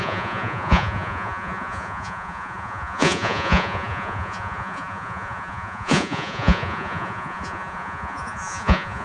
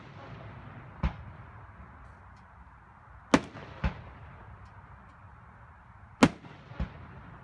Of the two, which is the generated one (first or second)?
first